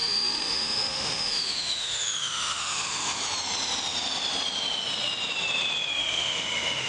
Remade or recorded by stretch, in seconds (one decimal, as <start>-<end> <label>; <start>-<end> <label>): 0.0-3.2 remade; 3.2-5.9 recorded; 5.9-6.9 remade

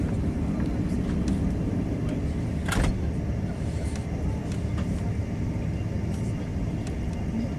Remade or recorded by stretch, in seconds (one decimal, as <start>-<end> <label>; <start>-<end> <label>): 0.0-6.5 recorded; 6.5-7.1 remade; 7.1-7.6 recorded

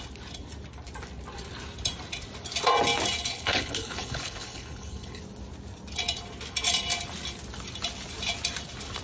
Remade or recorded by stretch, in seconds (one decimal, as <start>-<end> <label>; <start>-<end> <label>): 0.0-3.3 recorded; 3.3-5.2 remade; 5.2-9.0 recorded

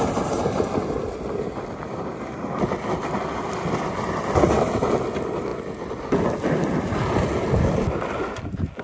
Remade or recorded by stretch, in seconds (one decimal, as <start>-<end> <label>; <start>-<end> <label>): 0.0-8.8 recorded

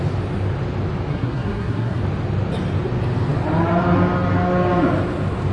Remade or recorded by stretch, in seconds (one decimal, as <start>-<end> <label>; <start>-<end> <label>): 0.0-1.1 recorded; 1.1-2.0 remade; 2.0-5.5 recorded